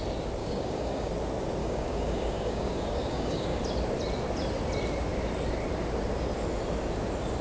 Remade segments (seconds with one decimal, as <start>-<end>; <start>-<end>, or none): 0.4-1.1; 1.6-3.6